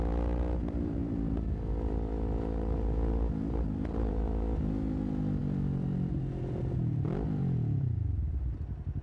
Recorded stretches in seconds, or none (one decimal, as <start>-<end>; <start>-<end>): none